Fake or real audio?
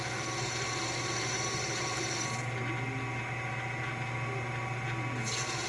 real